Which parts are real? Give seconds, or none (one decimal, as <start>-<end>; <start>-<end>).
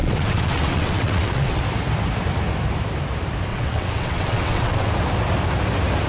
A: 1.6-3.5; 4.9-6.1